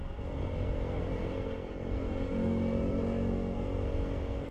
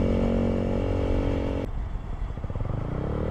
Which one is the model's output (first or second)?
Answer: first